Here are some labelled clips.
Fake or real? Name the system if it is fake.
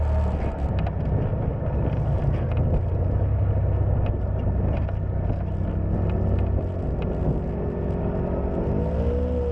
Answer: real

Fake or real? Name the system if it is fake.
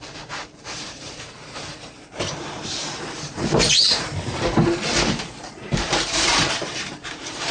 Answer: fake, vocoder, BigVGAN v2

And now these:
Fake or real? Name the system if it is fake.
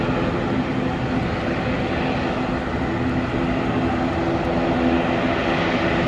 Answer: real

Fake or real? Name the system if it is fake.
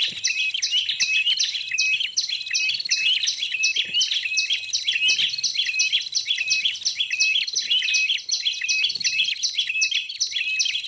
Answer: real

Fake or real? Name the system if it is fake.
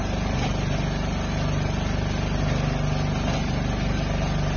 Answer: real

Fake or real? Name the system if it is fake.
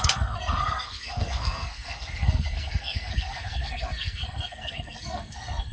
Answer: fake, codec, SNAC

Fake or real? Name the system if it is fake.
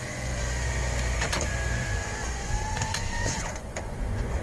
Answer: fake, vocoder, Vocos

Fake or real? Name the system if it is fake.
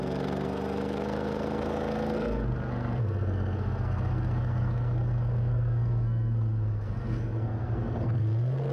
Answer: fake, codec, SNAC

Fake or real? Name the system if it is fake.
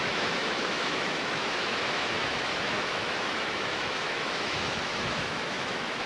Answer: fake, autoencoder, DAC-VAE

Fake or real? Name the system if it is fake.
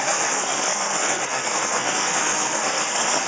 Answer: fake, codec, SNAC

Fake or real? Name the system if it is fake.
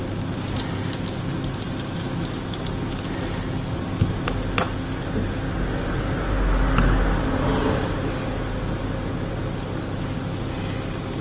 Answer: real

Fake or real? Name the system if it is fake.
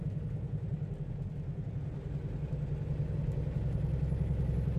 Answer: real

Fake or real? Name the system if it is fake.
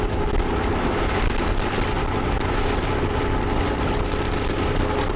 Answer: real